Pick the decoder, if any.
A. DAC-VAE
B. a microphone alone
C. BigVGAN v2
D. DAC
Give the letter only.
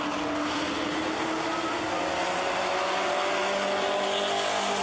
B